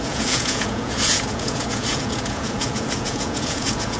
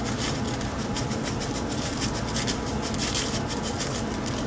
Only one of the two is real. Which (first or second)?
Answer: second